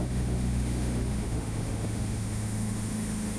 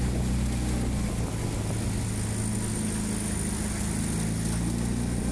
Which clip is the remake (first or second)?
first